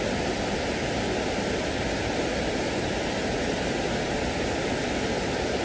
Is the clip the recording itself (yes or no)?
yes